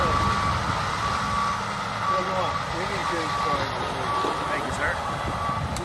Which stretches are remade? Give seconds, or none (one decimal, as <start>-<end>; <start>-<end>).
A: none